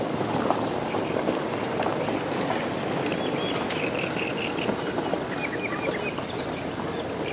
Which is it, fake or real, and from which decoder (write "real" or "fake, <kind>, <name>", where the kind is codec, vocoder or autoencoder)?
real